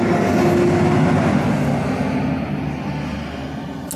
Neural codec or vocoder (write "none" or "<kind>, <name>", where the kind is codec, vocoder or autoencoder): none